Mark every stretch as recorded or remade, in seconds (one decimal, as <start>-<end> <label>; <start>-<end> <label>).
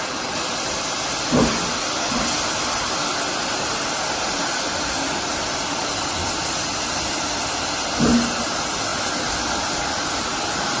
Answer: 0.0-10.8 recorded